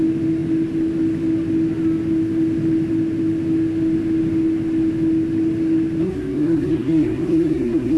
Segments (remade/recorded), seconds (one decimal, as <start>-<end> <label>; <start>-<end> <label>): 0.0-6.0 recorded; 6.0-8.0 remade